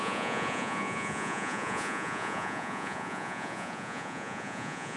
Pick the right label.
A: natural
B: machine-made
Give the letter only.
B